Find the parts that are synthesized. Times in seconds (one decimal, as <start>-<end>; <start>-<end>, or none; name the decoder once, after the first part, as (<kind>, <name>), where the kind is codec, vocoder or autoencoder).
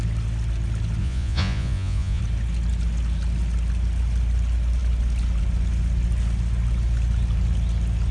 1.0-2.2 (vocoder, Vocos)